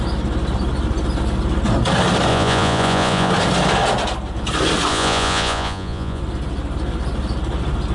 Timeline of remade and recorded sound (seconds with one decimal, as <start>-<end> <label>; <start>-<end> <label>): 0.0-2.3 recorded; 2.3-3.3 remade; 3.3-4.9 recorded; 4.9-6.2 remade; 6.2-7.9 recorded